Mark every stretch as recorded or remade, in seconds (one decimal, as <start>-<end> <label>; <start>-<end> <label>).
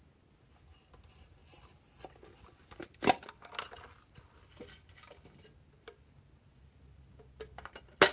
0.0-8.1 recorded